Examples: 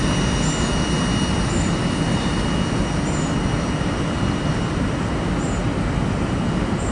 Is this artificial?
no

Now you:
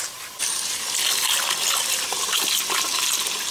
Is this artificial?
no